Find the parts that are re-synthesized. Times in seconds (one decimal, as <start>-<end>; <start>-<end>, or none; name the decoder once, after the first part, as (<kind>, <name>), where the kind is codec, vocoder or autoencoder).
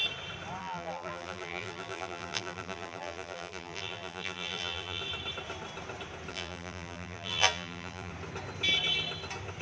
0.6-5.0 (vocoder, BigVGAN v2); 6.3-8.1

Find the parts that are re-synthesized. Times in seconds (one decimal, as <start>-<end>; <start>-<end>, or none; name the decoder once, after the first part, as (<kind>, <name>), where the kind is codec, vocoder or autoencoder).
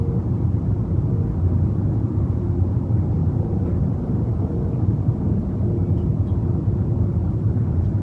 3.2-5.0 (vocoder, BigVGAN v2); 7.2-8.0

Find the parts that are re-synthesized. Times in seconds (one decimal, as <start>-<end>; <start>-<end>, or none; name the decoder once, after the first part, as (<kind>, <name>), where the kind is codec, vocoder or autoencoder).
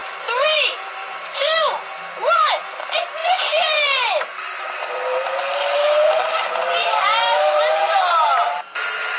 0.0-1.6 (vocoder, BigVGAN v2); 3.2-8.0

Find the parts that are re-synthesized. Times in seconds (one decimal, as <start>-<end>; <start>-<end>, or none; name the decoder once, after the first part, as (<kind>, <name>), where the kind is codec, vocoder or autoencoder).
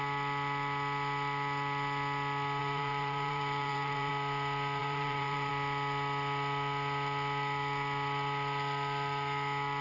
2.6-4.1 (vocoder, BigVGAN v2); 4.8-5.5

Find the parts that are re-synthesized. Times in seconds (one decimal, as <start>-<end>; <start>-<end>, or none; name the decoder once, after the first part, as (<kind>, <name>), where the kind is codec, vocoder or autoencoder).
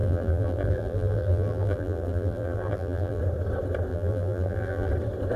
0.0-3.2 (vocoder, BigVGAN v2); 3.9-4.9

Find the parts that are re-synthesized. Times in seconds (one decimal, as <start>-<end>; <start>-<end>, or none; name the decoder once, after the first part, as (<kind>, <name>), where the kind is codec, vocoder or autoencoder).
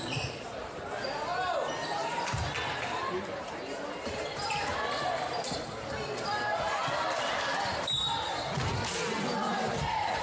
0.0-1.3 (vocoder, BigVGAN v2); 3.9-6.8; 9.5-10.2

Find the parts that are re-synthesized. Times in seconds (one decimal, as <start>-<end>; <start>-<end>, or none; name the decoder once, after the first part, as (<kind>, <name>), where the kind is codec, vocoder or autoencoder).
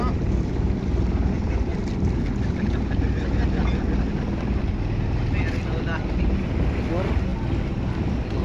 none